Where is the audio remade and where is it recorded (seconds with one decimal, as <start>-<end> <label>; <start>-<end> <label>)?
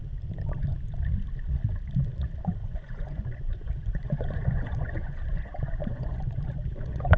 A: 0.0-2.6 recorded; 2.6-7.2 remade